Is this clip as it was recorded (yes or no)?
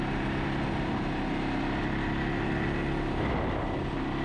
yes